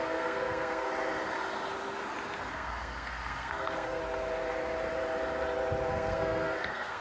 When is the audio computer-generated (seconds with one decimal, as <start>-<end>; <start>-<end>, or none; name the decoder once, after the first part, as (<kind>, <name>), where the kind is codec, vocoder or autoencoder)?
0.0-0.9 (codec, SNAC); 2.5-4.0; 5.9-7.0